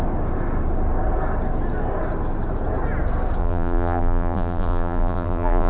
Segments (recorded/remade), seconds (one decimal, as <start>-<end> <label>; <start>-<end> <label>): 0.0-3.4 recorded; 3.4-5.7 remade